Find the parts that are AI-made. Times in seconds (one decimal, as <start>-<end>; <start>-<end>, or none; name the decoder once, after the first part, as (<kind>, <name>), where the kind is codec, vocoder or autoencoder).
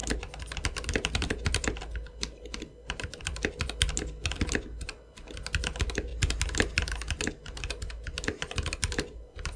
none